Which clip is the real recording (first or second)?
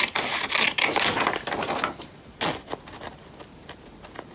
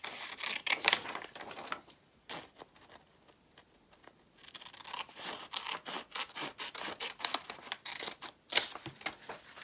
first